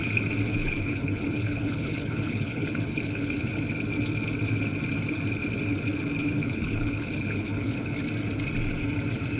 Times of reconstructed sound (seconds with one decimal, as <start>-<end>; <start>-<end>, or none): 0.5-3.4; 6.2-8.0